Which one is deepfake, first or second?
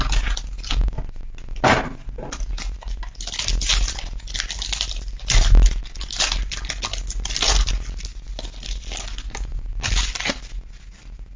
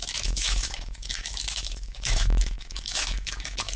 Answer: second